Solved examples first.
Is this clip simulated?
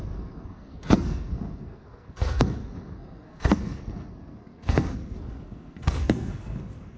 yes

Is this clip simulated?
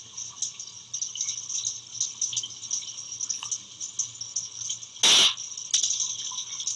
no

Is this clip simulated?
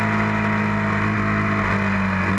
no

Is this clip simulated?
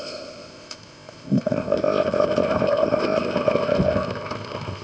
yes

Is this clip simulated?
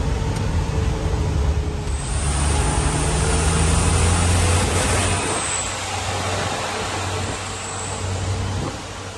no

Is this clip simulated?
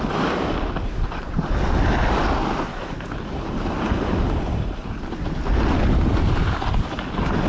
no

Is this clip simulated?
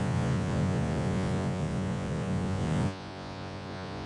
yes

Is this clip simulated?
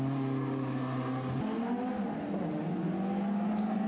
no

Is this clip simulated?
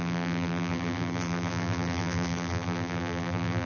yes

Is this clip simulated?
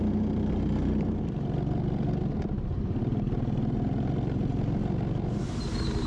no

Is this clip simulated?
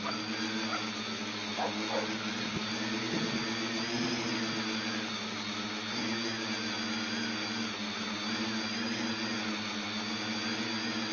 no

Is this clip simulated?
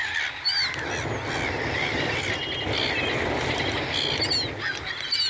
no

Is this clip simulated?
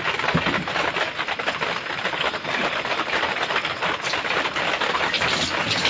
no